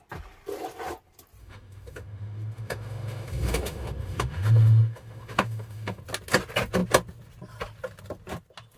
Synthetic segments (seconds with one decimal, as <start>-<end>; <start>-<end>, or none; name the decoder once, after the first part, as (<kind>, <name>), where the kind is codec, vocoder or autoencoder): 1.4-6.0 (autoencoder, DAC-VAE)